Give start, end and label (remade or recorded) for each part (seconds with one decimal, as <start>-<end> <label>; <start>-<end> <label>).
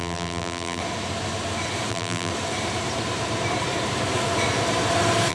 0.0-0.8 remade; 0.8-1.9 recorded; 1.9-2.3 remade; 2.3-5.3 recorded